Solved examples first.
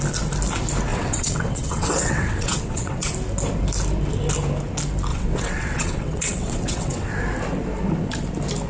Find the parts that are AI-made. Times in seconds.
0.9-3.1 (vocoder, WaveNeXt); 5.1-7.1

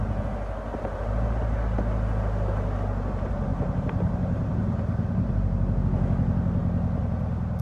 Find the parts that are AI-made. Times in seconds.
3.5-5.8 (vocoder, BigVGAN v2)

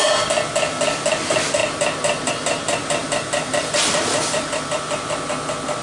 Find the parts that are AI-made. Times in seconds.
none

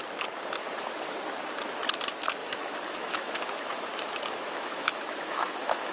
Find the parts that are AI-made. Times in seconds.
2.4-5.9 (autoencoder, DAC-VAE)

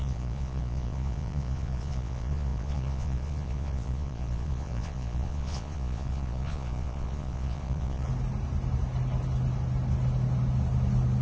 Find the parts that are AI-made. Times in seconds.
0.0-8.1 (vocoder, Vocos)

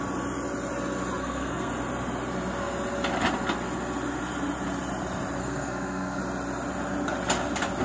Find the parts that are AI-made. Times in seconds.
1.2-1.7 (codec, SNAC); 5.4-6.2

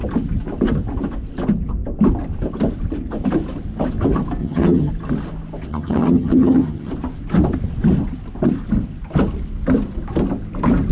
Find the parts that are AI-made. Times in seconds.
4.4-4.9 (vocoder, HiFi-GAN); 5.7-6.9